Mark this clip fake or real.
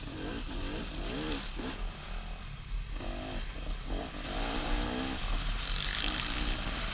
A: real